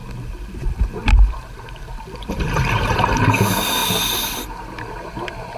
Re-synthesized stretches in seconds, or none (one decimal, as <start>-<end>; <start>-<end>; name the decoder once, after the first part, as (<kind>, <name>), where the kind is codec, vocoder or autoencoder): 0.0-3.4 (vocoder, BigVGAN v2)